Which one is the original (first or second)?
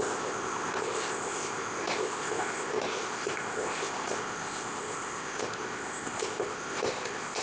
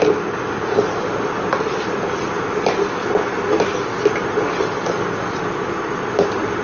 second